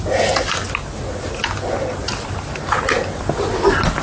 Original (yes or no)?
yes